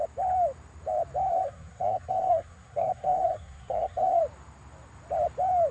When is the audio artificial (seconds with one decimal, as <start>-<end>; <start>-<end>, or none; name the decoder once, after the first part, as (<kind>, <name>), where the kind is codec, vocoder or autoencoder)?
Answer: 1.3-4.2 (codec, SNAC)